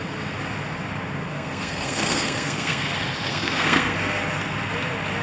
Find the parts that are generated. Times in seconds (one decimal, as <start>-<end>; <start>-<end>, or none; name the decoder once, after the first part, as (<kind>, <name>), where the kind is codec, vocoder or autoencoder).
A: 1.3-2.9 (codec, SNAC); 3.3-4.0